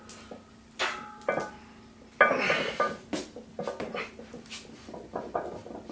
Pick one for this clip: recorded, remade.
recorded